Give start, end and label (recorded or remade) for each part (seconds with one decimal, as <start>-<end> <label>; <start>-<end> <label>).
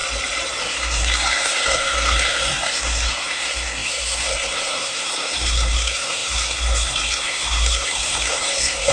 0.0-0.6 recorded; 0.6-8.9 remade